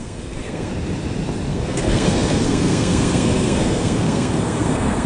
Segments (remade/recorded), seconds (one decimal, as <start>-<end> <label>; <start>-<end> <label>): 0.0-0.7 remade; 0.7-1.5 recorded; 1.5-5.1 remade